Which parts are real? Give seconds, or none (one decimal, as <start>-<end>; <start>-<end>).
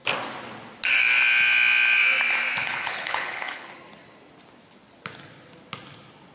0.0-2.6; 3.7-6.3